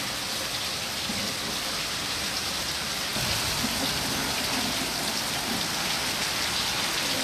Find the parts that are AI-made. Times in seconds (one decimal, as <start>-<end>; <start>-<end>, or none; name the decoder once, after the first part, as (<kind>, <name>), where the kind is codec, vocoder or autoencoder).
none